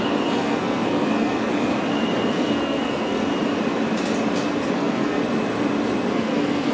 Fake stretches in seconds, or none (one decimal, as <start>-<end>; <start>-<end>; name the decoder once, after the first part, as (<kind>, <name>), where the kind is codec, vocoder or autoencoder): 0.0-1.5 (codec, SNAC); 2.3-3.3; 4.7-5.2; 6.1-6.7